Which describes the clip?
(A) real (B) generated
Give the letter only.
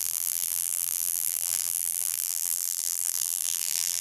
B